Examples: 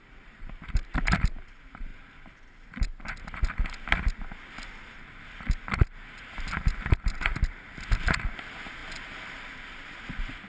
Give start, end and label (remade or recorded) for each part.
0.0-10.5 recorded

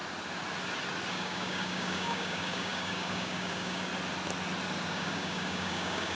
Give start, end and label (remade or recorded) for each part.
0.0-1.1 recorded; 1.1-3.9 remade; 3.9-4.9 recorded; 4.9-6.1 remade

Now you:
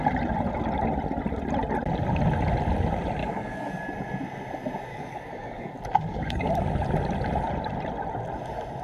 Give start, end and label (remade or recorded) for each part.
0.0-3.2 recorded; 3.2-3.8 remade; 3.8-4.9 recorded; 4.9-6.5 remade; 6.5-8.8 recorded